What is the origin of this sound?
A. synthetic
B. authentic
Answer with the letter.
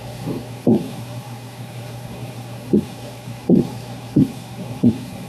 A